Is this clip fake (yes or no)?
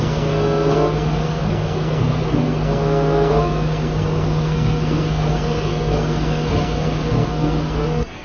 yes